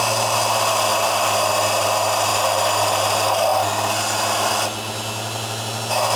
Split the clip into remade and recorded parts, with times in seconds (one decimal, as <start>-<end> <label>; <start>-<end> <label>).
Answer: 0.0-2.3 recorded; 2.3-2.9 remade; 2.9-6.2 recorded